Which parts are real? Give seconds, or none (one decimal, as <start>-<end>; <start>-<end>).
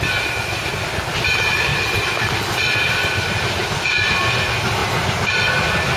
0.0-1.7; 4.1-6.0